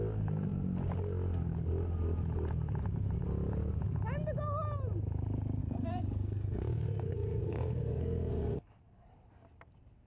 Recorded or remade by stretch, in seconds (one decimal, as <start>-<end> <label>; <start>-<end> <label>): 0.0-5.6 recorded; 5.6-8.7 remade; 8.7-10.1 recorded